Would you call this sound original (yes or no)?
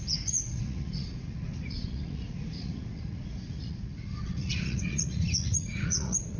no